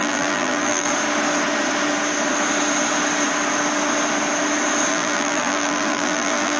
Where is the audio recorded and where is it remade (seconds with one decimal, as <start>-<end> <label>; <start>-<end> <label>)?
0.0-0.9 remade; 0.9-4.9 recorded; 4.9-6.6 remade